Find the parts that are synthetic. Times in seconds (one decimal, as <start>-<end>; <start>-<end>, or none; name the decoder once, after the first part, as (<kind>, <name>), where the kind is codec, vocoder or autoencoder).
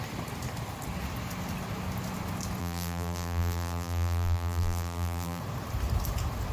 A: 2.6-5.4 (vocoder, BigVGAN v2)